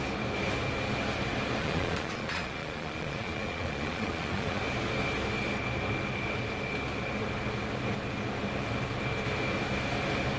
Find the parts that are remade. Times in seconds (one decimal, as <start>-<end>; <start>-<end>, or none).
1.6-4.6